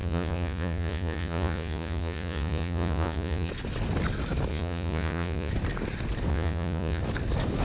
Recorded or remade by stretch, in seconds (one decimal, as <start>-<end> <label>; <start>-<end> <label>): 0.0-3.5 remade; 3.5-4.5 recorded; 4.5-5.5 remade; 5.5-6.3 recorded; 6.3-7.0 remade; 7.0-7.6 recorded